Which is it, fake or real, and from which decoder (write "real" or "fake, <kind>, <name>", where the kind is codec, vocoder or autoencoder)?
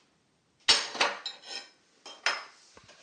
real